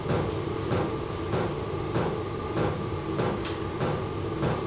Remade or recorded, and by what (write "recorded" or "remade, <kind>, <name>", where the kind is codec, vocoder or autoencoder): recorded